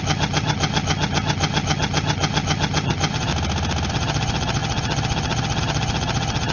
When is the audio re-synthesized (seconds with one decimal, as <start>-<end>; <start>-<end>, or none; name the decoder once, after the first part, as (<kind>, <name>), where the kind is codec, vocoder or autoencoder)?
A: 0.0-3.3 (vocoder, HiFi-GAN); 3.9-6.5